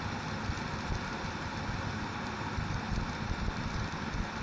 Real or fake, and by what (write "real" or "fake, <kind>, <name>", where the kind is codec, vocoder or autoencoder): real